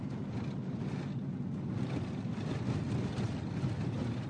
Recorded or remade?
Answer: recorded